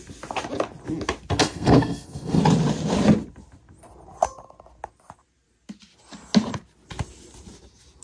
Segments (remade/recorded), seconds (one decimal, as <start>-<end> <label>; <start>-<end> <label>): 0.0-1.4 recorded; 1.4-2.4 remade; 2.4-8.0 recorded